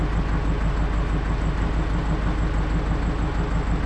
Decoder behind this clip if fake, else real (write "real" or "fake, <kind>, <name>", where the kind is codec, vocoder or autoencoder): real